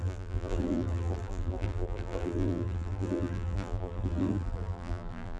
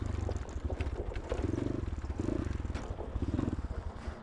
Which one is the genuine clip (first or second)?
second